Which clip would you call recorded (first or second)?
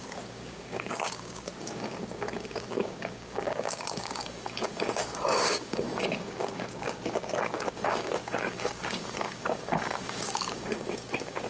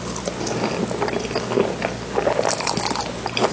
second